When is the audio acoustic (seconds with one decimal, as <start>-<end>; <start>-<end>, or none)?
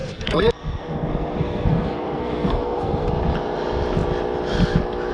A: 3.1-5.1